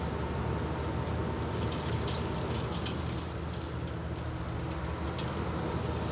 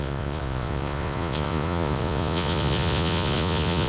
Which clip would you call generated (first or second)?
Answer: second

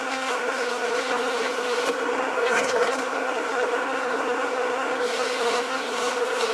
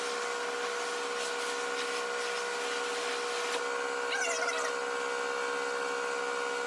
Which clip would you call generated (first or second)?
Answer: first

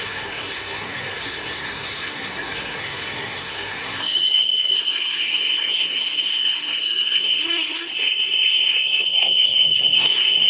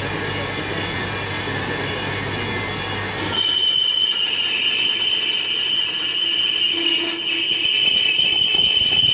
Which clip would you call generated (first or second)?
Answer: first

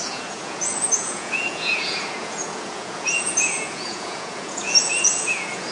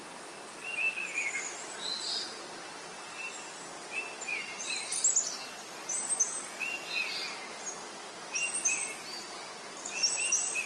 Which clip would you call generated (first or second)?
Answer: first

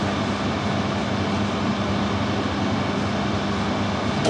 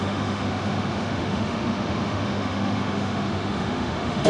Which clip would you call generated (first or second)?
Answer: second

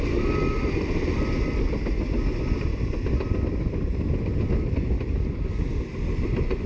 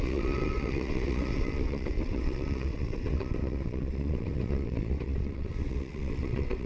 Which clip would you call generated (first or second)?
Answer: second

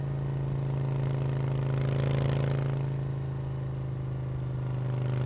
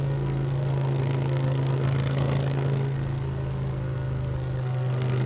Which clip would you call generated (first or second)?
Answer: second